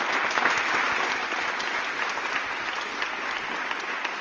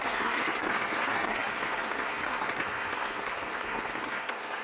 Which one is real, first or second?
first